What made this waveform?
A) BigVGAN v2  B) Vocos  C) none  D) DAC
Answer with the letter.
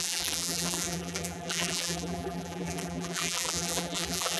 A